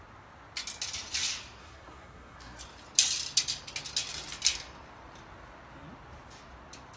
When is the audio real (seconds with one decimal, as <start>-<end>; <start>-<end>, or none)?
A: 0.0-1.6; 2.6-7.0

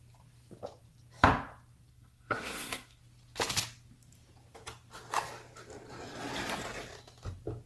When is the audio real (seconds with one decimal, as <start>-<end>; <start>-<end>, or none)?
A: 0.0-1.9; 3.0-7.7

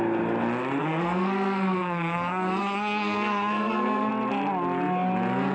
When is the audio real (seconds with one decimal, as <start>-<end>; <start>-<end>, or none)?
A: 0.0-0.8; 4.1-5.5

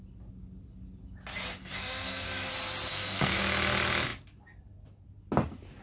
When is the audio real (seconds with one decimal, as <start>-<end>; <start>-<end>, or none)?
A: 0.0-1.6; 2.5-2.9; 3.4-5.8

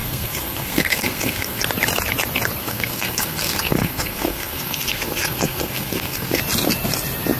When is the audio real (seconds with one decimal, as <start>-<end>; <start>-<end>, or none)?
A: 1.6-2.6; 6.4-7.4

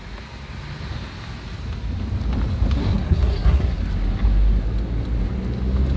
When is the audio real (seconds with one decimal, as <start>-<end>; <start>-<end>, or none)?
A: 0.0-2.8; 3.9-6.0

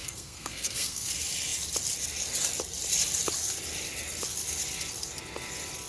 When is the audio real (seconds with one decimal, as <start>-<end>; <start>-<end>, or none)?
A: 1.1-5.9

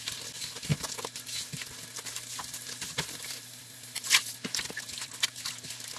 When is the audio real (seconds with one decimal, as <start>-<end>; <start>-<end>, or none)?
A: 0.0-6.0